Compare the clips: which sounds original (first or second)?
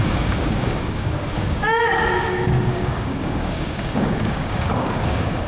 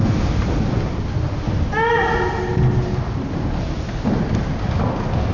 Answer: second